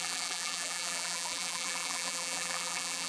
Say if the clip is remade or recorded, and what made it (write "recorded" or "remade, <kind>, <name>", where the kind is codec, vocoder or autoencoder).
remade, vocoder, BigVGAN v2